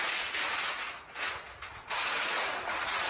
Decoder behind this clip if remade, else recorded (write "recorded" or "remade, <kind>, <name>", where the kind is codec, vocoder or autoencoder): remade, vocoder, Vocos